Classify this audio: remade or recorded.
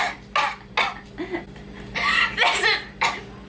recorded